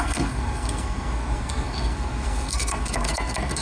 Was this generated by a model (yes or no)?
yes